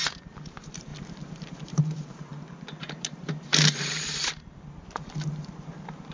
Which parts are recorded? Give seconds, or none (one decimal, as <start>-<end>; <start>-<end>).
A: 2.3-2.8